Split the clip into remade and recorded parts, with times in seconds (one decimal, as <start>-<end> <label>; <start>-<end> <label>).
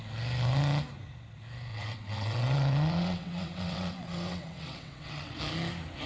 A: 0.0-1.7 recorded; 1.7-5.4 remade; 5.4-6.1 recorded